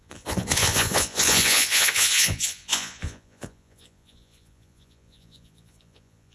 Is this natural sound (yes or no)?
no